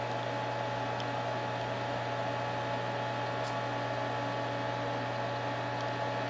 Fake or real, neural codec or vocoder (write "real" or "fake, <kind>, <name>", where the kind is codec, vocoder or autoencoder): real